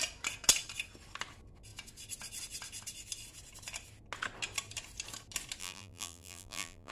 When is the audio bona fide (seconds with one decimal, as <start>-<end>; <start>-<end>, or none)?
0.0-5.6